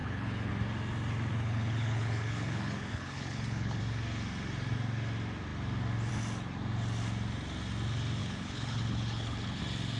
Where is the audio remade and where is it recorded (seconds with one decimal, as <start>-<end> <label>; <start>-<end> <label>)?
0.0-0.5 remade; 0.5-1.3 recorded; 1.3-3.8 remade; 3.8-8.2 recorded; 8.2-9.6 remade; 9.6-10.0 recorded